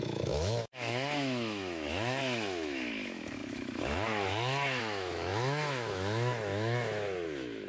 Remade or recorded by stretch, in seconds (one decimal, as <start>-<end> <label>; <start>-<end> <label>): 0.0-7.7 remade

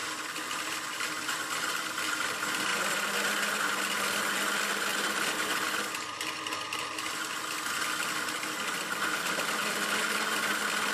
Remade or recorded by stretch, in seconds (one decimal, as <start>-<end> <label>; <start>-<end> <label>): 0.0-10.9 recorded

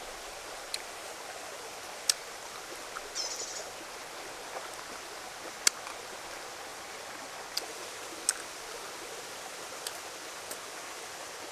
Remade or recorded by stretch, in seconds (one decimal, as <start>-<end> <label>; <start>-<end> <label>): 0.0-11.5 recorded